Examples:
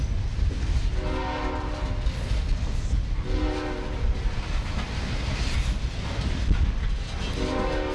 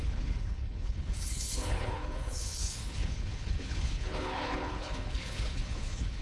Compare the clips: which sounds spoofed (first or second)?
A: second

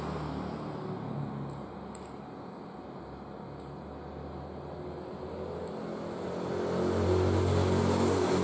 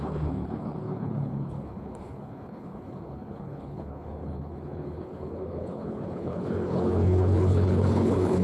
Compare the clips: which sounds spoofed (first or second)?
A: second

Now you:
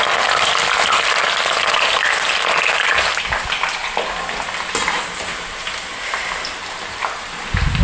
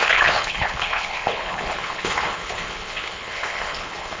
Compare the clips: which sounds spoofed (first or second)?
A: second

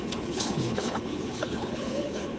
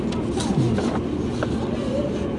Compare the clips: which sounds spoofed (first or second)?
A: first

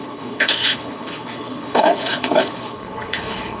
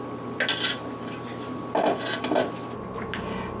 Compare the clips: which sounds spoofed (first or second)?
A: first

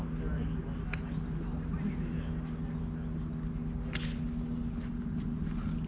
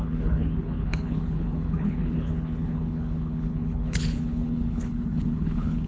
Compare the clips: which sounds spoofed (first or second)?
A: second